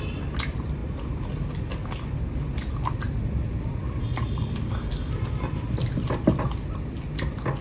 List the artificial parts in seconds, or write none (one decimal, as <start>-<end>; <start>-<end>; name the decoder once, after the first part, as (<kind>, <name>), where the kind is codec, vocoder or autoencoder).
none